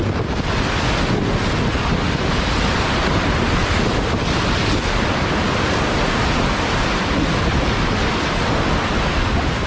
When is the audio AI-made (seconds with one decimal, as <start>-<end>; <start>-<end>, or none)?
none